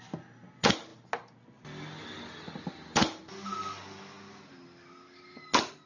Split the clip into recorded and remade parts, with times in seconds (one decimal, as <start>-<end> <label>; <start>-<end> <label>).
0.0-5.9 recorded